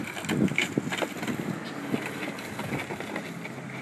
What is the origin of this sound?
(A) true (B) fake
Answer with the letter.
A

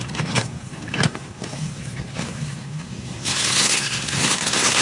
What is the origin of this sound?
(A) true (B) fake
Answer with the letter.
B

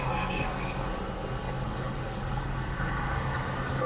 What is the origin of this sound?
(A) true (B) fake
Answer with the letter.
B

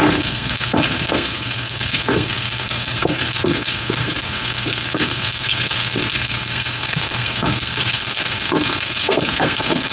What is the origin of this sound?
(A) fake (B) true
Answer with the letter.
A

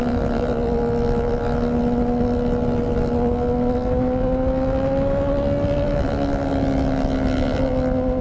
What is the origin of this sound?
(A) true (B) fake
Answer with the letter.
A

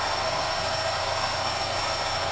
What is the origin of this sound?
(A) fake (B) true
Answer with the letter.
A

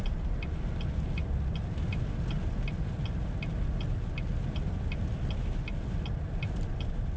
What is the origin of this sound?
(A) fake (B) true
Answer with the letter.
B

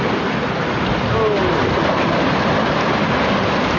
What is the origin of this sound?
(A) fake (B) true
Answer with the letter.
B